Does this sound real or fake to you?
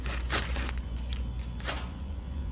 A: fake